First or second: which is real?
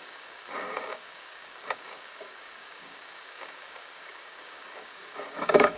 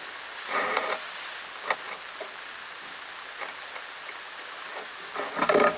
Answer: second